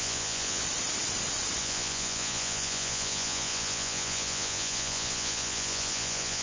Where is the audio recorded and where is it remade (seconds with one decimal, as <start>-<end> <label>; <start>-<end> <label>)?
0.0-0.6 remade; 0.6-1.6 recorded; 1.6-6.4 remade